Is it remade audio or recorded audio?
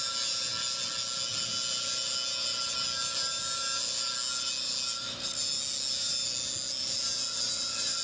recorded